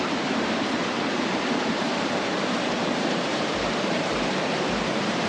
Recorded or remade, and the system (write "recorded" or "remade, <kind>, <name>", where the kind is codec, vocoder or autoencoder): remade, vocoder, BigVGAN v2